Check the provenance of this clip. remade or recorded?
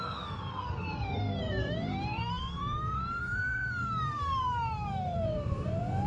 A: remade